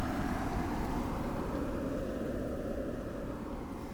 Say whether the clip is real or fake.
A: real